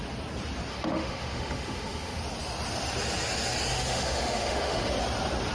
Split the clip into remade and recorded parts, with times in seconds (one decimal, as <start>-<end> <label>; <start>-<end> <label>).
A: 0.0-0.7 recorded; 0.7-2.2 remade; 2.2-3.7 recorded; 3.7-4.9 remade; 4.9-5.5 recorded